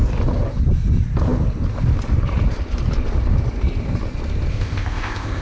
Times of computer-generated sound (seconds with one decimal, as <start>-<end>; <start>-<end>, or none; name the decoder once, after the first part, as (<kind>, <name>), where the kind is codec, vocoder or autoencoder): 4.5-5.4 (codec, ZipCodec)